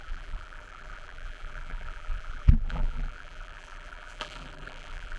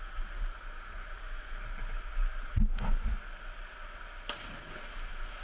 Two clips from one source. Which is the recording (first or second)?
second